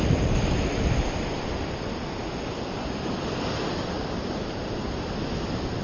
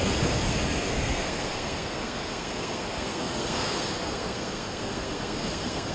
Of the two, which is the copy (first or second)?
second